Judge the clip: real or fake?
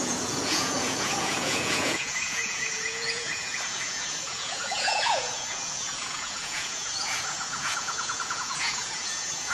fake